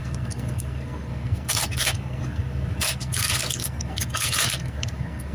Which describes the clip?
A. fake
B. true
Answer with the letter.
A